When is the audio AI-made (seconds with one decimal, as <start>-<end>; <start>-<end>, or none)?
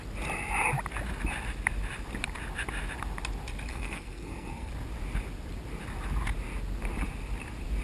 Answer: 3.7-4.7